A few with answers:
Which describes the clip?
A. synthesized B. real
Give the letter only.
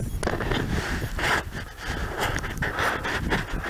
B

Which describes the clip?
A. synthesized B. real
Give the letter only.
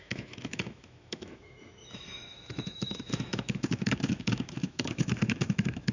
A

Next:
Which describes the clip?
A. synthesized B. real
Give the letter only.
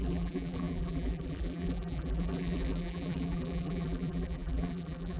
A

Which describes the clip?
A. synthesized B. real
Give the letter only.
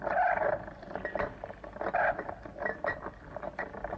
B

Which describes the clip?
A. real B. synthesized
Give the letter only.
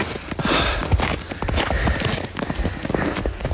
A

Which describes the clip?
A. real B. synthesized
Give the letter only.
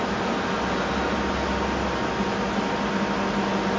A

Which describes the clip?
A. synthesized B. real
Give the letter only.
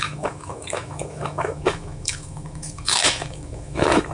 A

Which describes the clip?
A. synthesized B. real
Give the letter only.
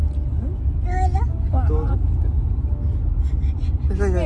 B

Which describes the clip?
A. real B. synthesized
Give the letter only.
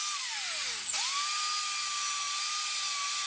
A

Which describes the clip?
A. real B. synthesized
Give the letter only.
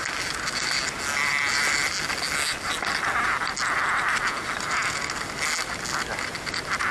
A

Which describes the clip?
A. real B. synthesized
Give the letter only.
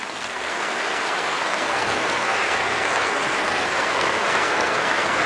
B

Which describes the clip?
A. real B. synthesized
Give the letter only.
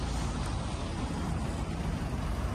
A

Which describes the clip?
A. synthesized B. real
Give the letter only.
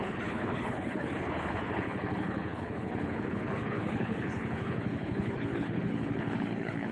A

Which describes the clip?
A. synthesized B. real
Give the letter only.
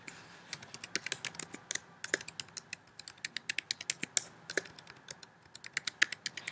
B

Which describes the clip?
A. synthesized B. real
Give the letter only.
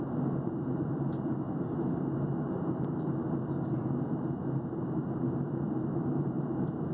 A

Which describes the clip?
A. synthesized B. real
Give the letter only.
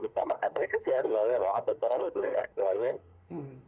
A